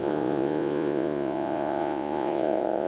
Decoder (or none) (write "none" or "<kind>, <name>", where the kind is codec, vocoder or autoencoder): vocoder, Vocos